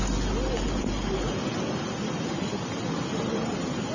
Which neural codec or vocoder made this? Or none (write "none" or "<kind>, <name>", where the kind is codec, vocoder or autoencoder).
none